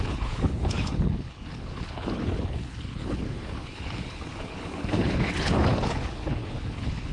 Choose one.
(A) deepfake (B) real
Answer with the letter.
A